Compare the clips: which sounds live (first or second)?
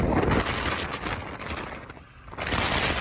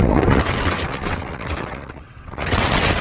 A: first